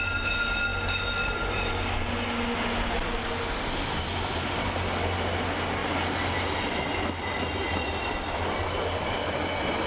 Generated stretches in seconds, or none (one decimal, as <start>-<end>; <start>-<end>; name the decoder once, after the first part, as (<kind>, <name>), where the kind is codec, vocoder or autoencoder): none